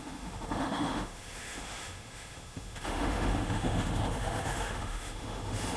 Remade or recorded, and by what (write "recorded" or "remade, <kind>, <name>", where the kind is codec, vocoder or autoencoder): remade, autoencoder, DAC-VAE